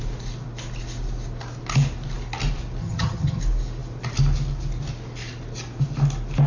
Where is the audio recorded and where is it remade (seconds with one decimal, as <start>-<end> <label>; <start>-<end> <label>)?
0.0-2.8 recorded; 2.8-3.4 remade; 3.4-6.5 recorded